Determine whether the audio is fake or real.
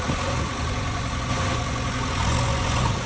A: fake